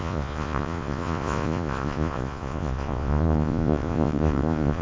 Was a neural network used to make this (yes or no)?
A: yes